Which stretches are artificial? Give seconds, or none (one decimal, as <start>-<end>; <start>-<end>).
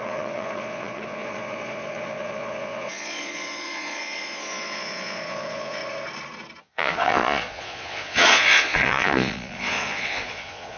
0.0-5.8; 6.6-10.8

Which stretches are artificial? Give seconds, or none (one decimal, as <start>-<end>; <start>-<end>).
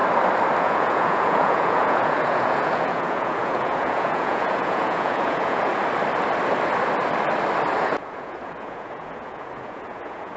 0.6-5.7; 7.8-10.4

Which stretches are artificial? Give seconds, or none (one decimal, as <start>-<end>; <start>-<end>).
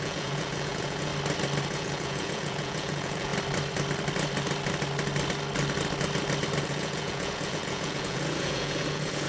0.0-1.1; 1.7-3.3; 6.6-9.3